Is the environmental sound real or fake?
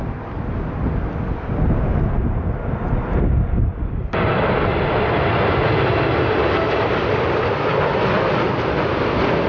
real